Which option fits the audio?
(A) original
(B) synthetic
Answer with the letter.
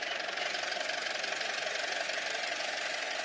A